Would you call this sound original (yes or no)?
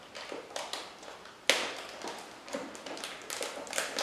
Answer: yes